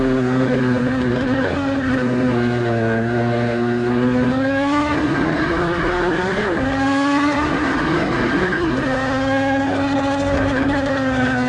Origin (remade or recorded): remade